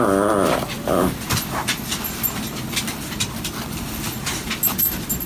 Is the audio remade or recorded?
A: recorded